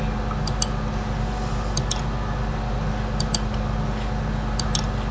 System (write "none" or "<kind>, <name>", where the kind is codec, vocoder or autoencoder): none